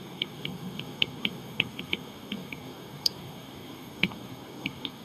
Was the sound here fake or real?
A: fake